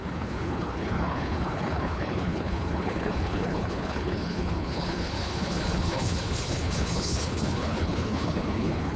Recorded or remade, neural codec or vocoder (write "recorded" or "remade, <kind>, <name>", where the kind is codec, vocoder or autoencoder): remade, codec, HILCodec